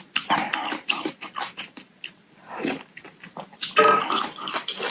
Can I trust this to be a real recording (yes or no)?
yes